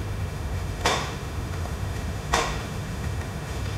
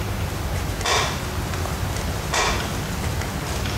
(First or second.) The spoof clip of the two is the first